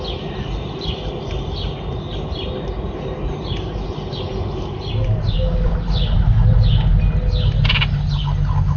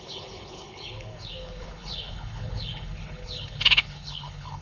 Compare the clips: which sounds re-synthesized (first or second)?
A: second